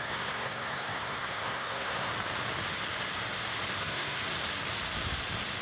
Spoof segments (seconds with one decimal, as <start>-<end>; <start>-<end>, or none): 0.0-2.1; 3.8-4.2